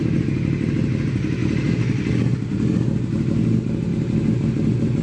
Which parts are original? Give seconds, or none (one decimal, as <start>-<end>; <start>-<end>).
0.0-5.0